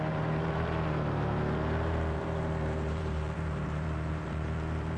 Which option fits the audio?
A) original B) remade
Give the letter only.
B